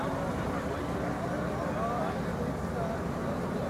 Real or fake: real